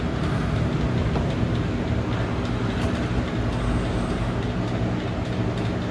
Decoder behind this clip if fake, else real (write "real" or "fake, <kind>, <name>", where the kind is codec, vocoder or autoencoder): real